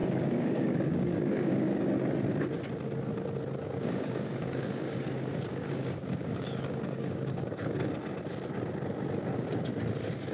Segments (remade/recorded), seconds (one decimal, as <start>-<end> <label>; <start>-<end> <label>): 0.0-1.9 remade; 1.9-3.6 recorded; 3.6-7.9 remade; 7.9-10.3 recorded